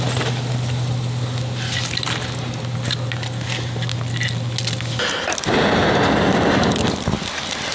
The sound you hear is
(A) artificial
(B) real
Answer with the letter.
B